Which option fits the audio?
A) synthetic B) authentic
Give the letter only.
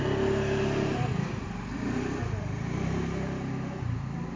B